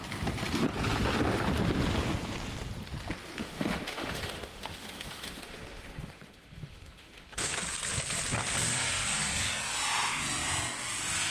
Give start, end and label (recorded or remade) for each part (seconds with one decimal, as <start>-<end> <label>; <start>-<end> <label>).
0.0-3.4 recorded; 3.4-7.6 remade; 7.6-11.3 recorded